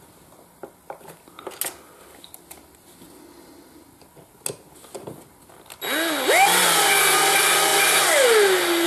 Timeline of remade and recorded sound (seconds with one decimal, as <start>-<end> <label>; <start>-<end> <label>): 0.0-8.9 recorded